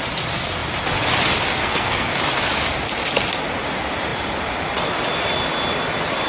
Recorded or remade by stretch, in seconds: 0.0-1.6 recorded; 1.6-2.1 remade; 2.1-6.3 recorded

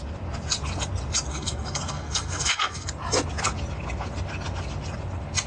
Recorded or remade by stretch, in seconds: 0.0-1.3 recorded; 1.3-2.9 remade; 2.9-5.5 recorded

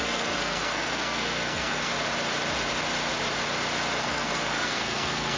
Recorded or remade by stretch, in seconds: 0.0-1.9 remade; 1.9-4.0 recorded; 4.0-5.4 remade

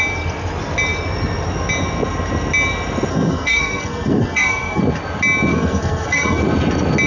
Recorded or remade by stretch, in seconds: 0.0-3.1 recorded; 3.1-4.8 remade; 4.8-5.5 recorded; 5.5-6.4 remade; 6.4-7.1 recorded

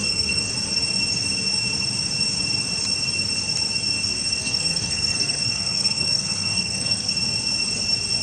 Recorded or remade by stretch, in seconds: 0.0-0.5 remade; 0.5-4.4 recorded; 4.4-7.1 remade; 7.1-8.2 recorded

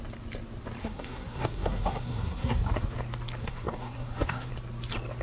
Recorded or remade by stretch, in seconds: 0.0-0.8 recorded; 0.8-2.6 remade; 2.6-3.4 recorded; 3.4-4.5 remade; 4.5-5.2 recorded